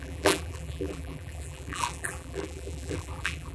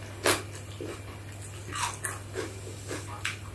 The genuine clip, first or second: second